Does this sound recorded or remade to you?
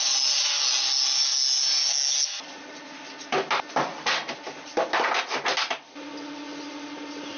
recorded